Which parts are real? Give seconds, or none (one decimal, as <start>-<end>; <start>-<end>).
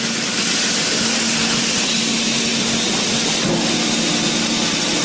0.0-5.0